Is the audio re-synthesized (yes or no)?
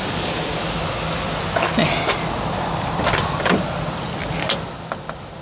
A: no